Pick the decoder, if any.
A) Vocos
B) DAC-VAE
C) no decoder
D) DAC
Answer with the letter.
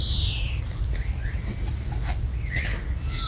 C